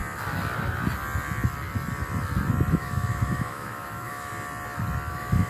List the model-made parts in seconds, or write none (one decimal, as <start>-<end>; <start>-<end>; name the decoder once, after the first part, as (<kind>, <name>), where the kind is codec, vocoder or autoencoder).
2.7-4.3 (autoencoder, DAC-VAE); 5.1-5.5